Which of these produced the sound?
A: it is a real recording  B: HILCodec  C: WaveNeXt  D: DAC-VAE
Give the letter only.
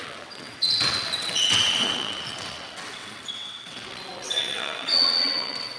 C